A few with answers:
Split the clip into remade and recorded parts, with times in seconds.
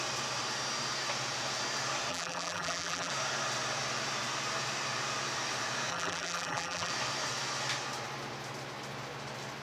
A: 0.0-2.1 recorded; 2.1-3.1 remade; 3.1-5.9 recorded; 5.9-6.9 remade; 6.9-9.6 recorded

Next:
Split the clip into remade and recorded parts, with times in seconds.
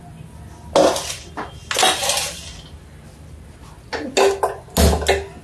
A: 0.0-5.4 recorded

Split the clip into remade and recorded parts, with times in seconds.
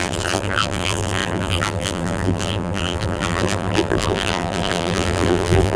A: 0.0-5.8 remade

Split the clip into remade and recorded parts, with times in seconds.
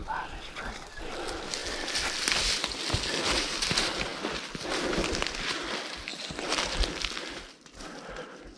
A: 0.0-8.6 recorded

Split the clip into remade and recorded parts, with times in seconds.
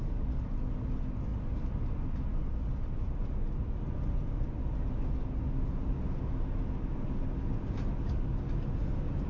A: 0.0-9.3 recorded